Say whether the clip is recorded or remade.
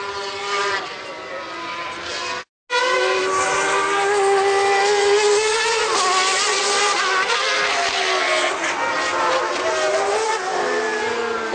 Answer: recorded